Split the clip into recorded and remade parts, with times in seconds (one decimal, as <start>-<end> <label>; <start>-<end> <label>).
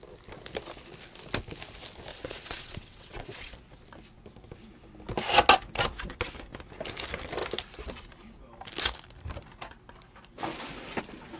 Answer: 0.0-2.1 recorded; 2.1-3.5 remade; 3.5-11.4 recorded